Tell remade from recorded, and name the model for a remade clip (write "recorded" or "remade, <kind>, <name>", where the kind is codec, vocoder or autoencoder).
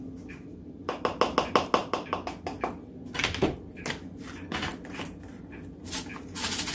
recorded